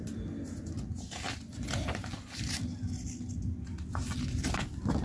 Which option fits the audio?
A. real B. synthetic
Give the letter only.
A